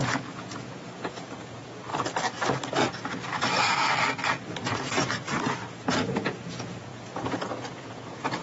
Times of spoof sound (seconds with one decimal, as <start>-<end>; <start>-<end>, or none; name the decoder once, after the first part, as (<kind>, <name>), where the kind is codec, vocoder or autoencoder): 0.0-1.9 (vocoder, Vocos); 5.9-8.4